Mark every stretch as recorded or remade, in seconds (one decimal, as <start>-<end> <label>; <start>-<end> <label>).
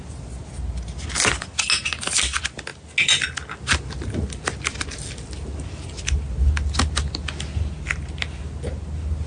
0.0-9.3 recorded